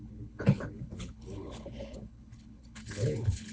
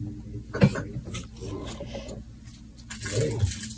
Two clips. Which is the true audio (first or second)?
second